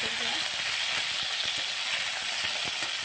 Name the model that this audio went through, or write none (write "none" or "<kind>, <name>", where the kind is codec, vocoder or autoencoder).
none